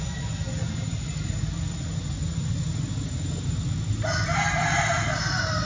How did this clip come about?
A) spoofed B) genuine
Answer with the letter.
B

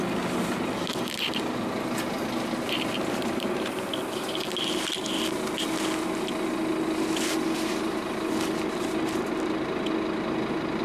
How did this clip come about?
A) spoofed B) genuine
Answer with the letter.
B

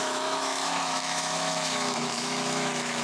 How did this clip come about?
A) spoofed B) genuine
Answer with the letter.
A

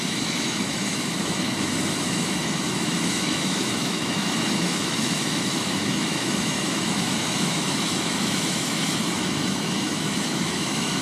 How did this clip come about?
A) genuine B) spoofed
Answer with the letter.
B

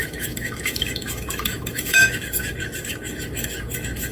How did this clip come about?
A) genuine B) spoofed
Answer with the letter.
B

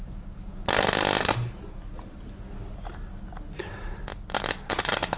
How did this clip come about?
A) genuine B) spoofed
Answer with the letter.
A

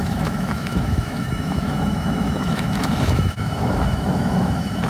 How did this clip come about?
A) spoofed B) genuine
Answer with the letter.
A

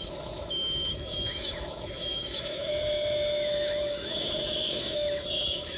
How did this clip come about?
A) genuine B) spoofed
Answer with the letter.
B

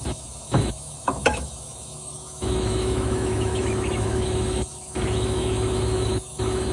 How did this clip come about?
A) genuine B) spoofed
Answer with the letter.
B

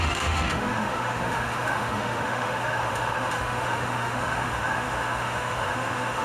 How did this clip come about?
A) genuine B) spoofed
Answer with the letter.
B